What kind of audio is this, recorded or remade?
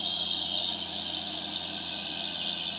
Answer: recorded